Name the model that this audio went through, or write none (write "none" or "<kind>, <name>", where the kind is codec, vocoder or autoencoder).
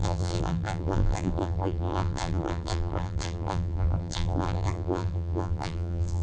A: vocoder, BigVGAN v2